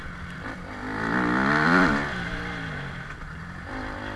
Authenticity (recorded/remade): recorded